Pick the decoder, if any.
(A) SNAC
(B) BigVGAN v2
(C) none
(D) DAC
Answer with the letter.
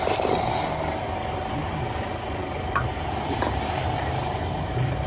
B